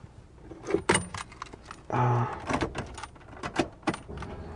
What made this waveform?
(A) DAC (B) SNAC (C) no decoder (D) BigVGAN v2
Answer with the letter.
C